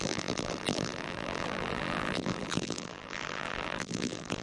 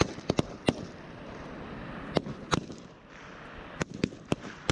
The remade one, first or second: first